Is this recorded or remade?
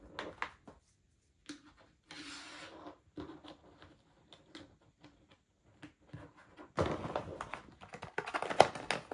recorded